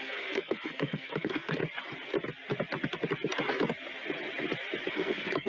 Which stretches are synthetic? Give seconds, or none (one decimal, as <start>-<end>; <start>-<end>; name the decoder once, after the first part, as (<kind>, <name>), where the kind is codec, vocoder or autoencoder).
0.0-1.6 (codec, SNAC); 4.9-5.5